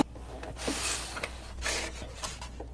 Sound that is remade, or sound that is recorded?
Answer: recorded